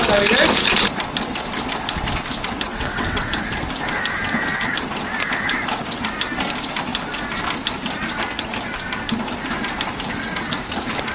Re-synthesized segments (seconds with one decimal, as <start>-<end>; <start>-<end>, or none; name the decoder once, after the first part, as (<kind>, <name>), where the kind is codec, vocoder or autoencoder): 2.7-3.3 (vocoder, WaveNeXt)